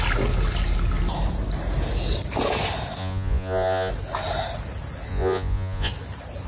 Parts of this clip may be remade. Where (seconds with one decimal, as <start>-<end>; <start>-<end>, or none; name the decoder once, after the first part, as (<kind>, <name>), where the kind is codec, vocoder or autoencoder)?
3.0-3.9 (vocoder, Vocos); 5.1-5.9